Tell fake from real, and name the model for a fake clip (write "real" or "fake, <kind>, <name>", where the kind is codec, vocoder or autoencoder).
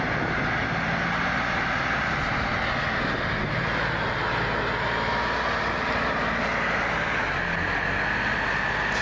real